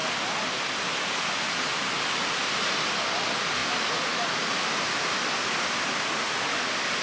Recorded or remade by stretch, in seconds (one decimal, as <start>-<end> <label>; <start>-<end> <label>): 0.0-7.0 recorded